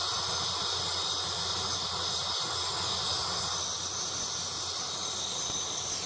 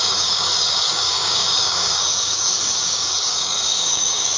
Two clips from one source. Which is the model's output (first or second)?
second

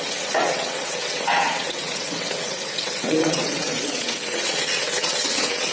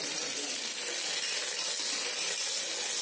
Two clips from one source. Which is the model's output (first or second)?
first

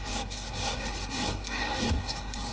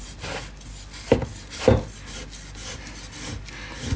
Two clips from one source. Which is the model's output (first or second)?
first